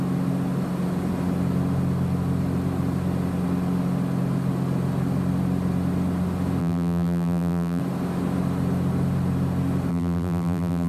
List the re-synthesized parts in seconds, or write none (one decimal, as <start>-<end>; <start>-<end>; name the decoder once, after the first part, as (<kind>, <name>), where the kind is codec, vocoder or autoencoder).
6.6-7.8 (vocoder, BigVGAN v2); 9.9-10.9